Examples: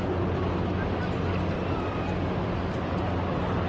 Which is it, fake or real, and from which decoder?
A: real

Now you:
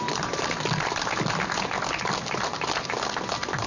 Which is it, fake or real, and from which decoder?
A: real